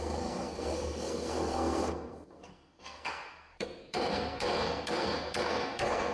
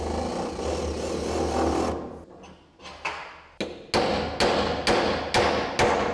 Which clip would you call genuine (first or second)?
second